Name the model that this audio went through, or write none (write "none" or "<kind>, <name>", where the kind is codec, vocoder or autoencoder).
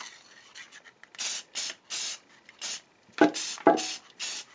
none